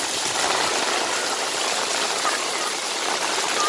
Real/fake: real